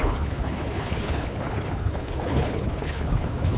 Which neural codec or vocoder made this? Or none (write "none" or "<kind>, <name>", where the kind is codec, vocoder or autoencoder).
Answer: codec, HILCodec